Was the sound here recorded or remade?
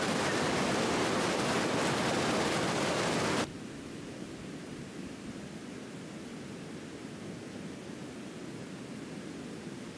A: recorded